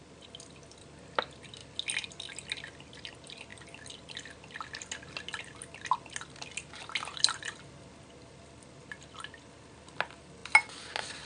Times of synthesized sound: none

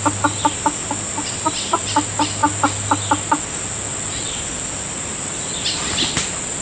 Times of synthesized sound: none